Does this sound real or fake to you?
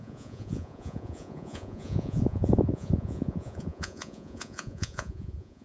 fake